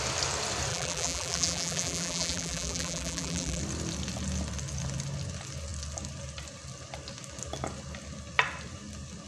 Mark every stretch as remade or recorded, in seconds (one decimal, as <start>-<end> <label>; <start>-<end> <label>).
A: 0.0-0.7 recorded; 0.7-3.6 remade; 3.6-9.3 recorded